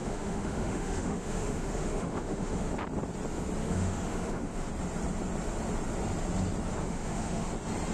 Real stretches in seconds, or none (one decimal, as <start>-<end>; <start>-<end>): 2.7-3.6; 4.7-6.8; 7.5-7.9